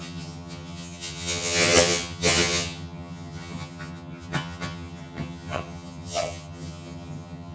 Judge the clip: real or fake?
fake